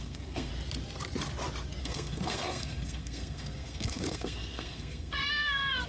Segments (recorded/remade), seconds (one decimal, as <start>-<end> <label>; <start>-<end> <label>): 0.0-0.5 remade; 0.5-1.8 recorded; 1.8-5.9 remade

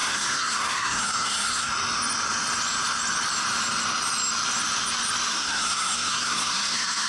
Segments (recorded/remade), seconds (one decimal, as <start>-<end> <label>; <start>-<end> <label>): 0.0-1.7 remade; 1.7-5.3 recorded; 5.3-7.1 remade

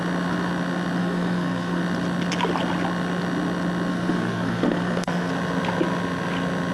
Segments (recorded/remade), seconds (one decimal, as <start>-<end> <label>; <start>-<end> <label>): 0.0-1.0 recorded; 1.0-1.8 remade; 1.8-3.9 recorded; 3.9-5.3 remade; 5.3-6.7 recorded

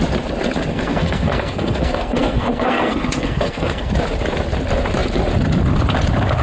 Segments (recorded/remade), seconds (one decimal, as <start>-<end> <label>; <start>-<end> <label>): 0.0-0.7 recorded; 0.7-3.9 remade; 3.9-6.4 recorded

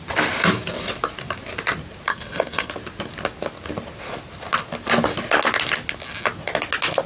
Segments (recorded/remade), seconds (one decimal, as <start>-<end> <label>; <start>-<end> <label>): 0.0-2.1 recorded; 2.1-2.7 remade; 2.7-7.1 recorded

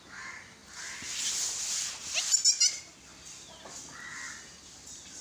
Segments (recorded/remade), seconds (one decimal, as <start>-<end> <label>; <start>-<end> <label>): 0.0-5.2 recorded

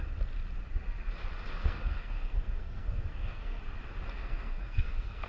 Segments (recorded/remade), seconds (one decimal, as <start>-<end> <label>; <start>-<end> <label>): 0.0-1.6 recorded; 1.6-3.6 remade; 3.6-4.2 recorded; 4.2-5.3 remade

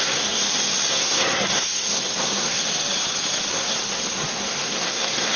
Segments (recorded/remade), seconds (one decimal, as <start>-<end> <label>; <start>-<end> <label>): 0.0-0.4 remade; 0.4-0.9 recorded; 0.9-2.6 remade; 2.6-3.5 recorded; 3.5-5.4 remade